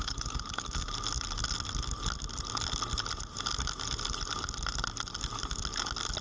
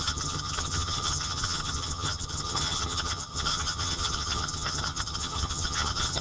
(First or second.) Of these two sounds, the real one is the first